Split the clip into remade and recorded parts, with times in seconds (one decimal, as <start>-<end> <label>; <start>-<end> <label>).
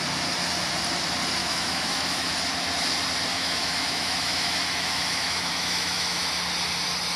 0.0-1.4 recorded; 1.4-2.3 remade; 2.3-3.3 recorded; 3.3-6.3 remade; 6.3-7.2 recorded